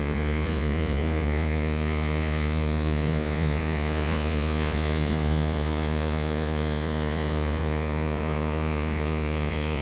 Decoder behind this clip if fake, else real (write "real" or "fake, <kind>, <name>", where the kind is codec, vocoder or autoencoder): fake, vocoder, Vocos